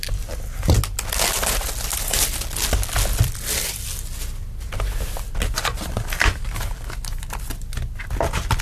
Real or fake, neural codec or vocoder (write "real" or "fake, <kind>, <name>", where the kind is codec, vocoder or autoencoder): real